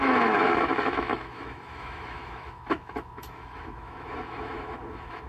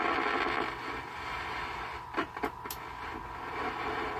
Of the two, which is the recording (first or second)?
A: second